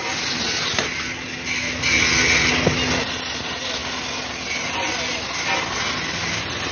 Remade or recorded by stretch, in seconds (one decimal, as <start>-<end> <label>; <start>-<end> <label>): 0.0-6.7 recorded

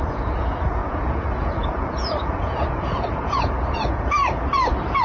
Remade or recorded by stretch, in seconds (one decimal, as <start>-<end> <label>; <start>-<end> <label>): 0.0-4.2 remade; 4.2-5.0 recorded

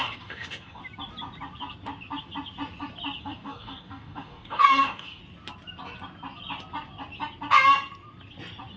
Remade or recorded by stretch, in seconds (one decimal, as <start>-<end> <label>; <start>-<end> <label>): 0.0-0.8 remade; 0.8-3.2 recorded; 3.2-5.2 remade; 5.2-8.8 recorded

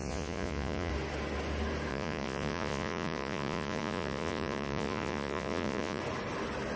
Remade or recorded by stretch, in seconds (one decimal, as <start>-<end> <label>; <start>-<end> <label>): 0.0-0.9 remade; 0.9-1.9 recorded; 1.9-6.0 remade; 6.0-6.8 recorded

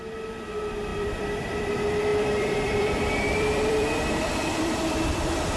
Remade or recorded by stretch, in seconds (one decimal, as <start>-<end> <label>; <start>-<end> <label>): 0.0-0.9 recorded; 0.9-1.7 remade; 1.7-2.1 recorded; 2.1-5.6 remade